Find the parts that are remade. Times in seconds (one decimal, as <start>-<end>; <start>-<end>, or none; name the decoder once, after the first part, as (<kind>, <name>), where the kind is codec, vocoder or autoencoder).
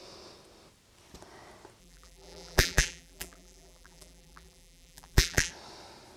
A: 1.8-5.5 (vocoder, BigVGAN v2)